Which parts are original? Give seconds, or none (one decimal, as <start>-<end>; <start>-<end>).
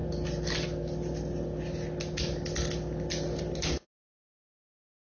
0.0-5.1